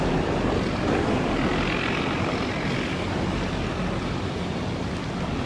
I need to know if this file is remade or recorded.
remade